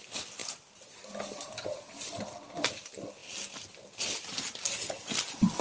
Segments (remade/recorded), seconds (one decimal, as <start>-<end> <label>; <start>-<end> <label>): 0.0-5.6 recorded